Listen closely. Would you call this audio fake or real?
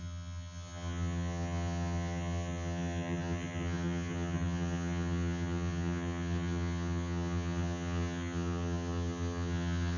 fake